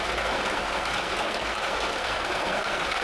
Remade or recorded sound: remade